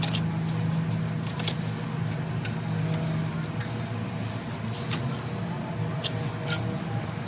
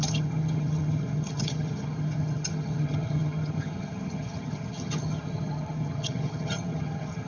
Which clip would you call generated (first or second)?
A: second